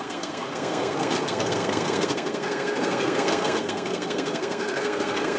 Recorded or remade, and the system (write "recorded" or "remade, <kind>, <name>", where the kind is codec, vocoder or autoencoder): remade, codec, SNAC